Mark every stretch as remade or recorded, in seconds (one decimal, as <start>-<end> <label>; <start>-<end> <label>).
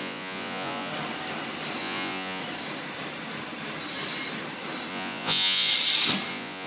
0.0-0.9 remade; 0.9-1.8 recorded; 1.8-2.4 remade; 2.4-4.9 recorded; 4.9-5.7 remade; 5.7-6.3 recorded; 6.3-6.7 remade